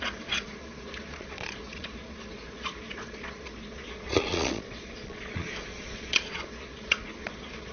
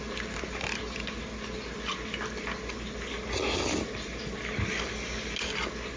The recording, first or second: second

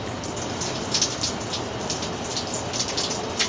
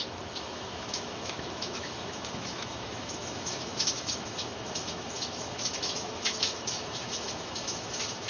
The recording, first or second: first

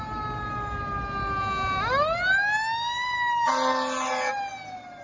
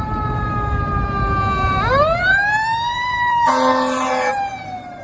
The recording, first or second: first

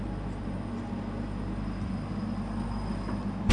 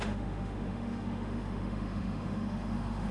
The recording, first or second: first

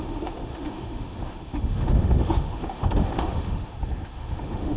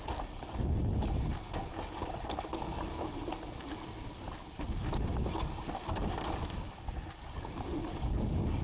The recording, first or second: second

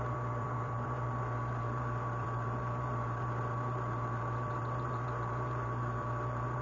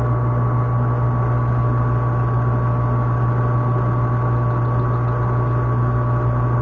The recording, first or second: second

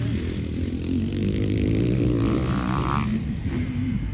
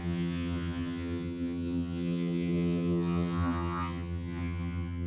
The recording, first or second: first